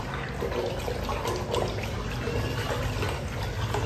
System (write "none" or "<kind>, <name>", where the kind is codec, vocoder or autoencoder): none